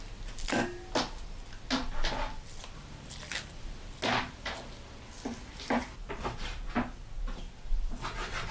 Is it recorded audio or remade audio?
recorded